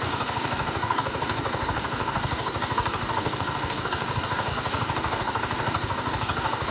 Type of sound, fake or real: fake